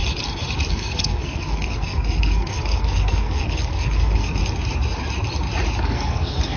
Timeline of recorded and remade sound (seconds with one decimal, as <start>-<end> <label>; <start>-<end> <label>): 0.0-0.7 recorded; 0.7-4.4 remade; 4.4-5.8 recorded; 5.8-6.6 remade